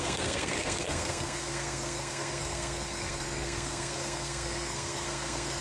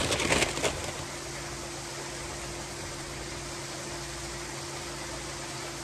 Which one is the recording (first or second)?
second